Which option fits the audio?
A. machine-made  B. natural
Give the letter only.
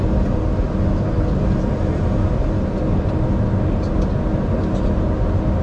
B